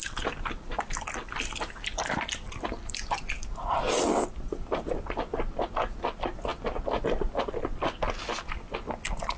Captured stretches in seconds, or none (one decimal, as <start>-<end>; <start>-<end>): 3.8-9.4